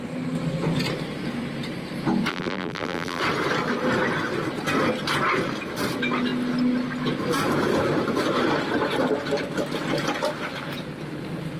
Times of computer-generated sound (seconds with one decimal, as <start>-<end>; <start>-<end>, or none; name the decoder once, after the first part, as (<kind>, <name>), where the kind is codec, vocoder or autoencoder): 2.3-3.2 (vocoder, BigVGAN v2)